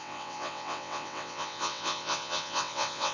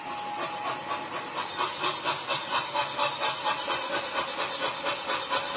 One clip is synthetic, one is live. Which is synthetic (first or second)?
first